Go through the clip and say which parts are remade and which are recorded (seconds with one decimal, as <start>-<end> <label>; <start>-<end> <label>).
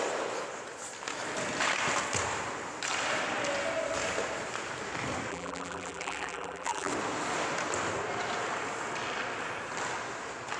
0.0-5.3 recorded; 5.3-6.9 remade; 6.9-10.6 recorded